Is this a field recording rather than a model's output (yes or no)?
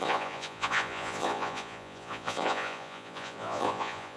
no